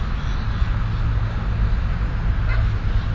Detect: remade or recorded recorded